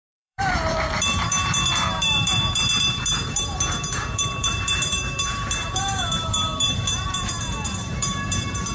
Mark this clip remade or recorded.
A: remade